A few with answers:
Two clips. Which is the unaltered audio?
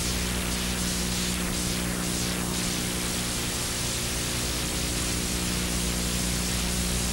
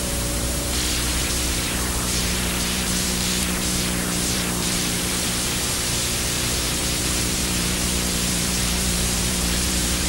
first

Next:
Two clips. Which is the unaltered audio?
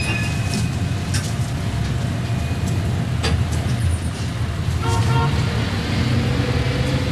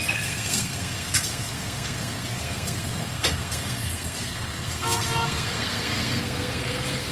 first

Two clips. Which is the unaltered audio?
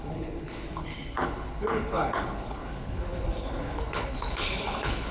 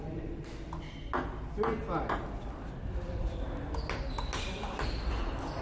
second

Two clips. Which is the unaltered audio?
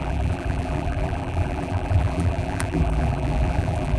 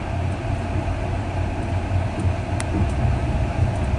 second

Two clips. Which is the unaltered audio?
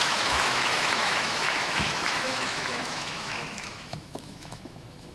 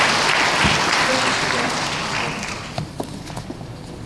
second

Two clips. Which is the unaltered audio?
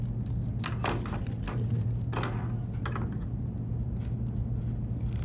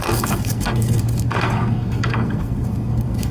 first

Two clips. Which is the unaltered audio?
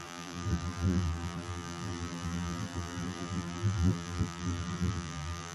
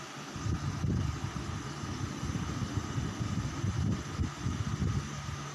second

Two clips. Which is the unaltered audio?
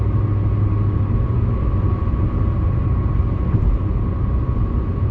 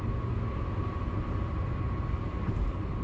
first